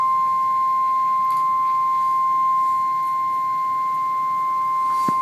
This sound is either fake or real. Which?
real